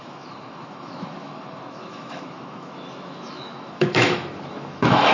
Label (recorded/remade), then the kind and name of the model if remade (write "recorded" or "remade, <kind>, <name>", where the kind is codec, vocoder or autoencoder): remade, autoencoder, DAC-VAE